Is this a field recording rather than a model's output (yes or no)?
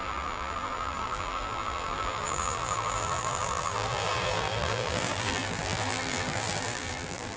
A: no